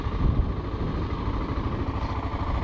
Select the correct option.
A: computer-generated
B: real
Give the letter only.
B